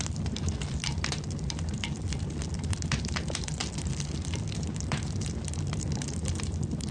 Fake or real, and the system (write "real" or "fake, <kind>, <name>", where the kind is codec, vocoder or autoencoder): fake, vocoder, BigVGAN v2